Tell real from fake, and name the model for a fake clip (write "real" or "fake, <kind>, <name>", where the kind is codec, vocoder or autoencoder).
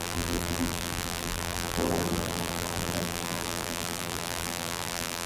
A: fake, vocoder, BigVGAN v2